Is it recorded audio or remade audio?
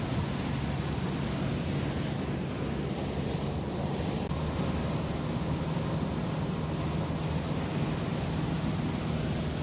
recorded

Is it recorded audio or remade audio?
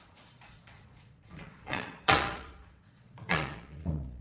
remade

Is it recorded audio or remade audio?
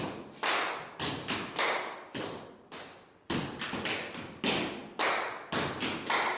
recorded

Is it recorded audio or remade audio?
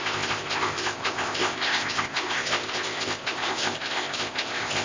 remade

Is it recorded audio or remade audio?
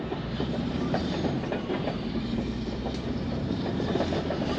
remade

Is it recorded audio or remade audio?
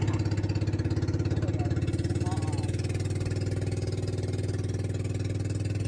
recorded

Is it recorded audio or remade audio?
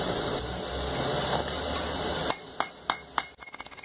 recorded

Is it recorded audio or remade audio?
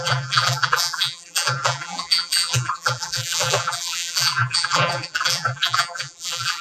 remade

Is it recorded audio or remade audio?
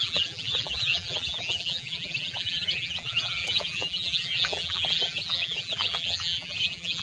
remade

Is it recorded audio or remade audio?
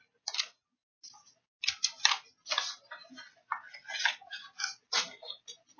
recorded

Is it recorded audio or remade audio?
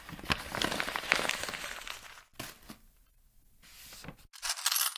recorded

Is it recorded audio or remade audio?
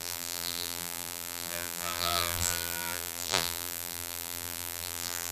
remade